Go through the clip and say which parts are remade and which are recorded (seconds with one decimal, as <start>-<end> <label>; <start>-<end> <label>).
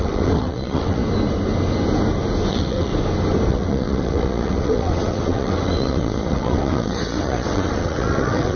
0.0-1.0 remade; 1.0-2.5 recorded; 2.5-2.9 remade; 2.9-3.5 recorded; 3.5-8.6 remade